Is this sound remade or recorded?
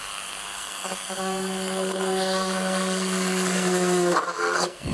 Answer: remade